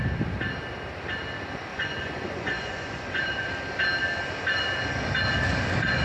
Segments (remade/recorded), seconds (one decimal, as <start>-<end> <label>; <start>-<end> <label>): 0.0-1.7 recorded; 1.7-3.5 remade; 3.5-6.0 recorded